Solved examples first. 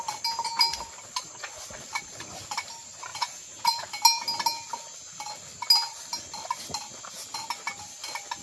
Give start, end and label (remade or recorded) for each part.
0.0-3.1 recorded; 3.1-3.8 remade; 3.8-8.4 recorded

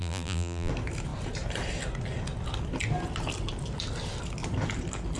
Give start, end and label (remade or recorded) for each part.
0.0-0.7 remade; 0.7-5.2 recorded

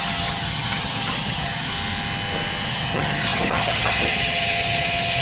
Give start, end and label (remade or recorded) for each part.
0.0-1.7 remade; 1.7-2.7 recorded; 2.7-5.2 remade

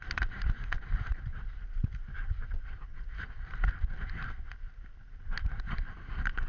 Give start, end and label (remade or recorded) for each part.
0.0-6.5 recorded

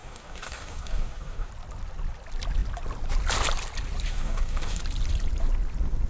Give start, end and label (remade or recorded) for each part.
0.0-1.5 remade; 1.5-4.1 recorded; 4.1-4.8 remade; 4.8-6.1 recorded